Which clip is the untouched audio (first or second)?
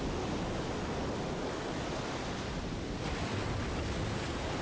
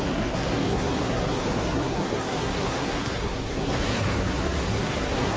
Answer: first